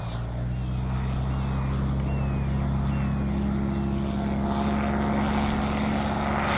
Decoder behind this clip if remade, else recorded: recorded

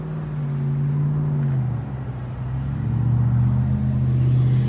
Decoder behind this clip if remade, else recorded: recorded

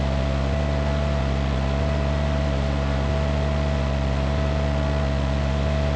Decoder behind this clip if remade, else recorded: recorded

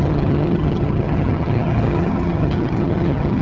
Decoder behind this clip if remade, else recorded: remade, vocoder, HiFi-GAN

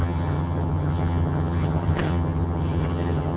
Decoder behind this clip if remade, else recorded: remade, vocoder, HiFi-GAN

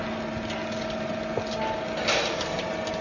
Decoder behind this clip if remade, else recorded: recorded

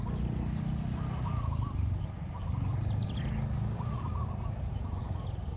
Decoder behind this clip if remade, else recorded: recorded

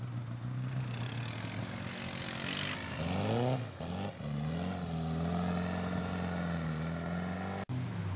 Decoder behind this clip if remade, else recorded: recorded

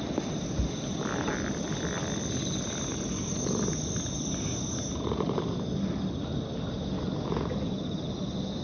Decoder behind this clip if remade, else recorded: recorded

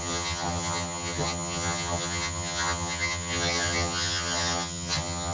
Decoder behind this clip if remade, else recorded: remade, vocoder, HiFi-GAN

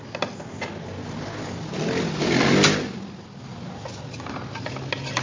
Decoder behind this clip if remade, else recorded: recorded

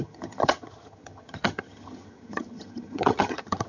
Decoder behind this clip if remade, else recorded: remade, vocoder, HiFi-GAN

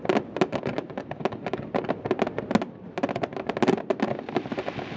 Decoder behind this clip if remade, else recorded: recorded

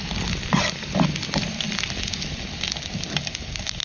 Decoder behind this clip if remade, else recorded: recorded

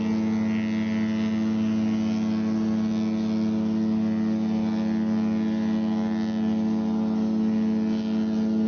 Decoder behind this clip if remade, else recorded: recorded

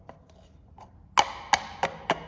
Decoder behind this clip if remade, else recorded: recorded